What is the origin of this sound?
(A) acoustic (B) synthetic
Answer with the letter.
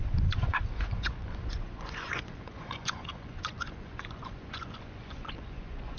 B